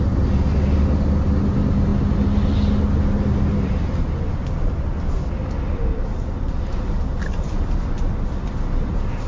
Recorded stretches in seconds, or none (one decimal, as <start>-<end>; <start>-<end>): 0.0-9.3